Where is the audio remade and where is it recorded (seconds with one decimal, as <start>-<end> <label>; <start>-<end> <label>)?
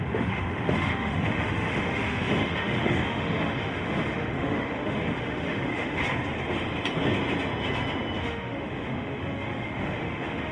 0.0-6.0 remade; 6.0-8.2 recorded; 8.2-10.5 remade